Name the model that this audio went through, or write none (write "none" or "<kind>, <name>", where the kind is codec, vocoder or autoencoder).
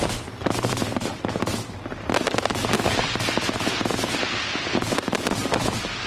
none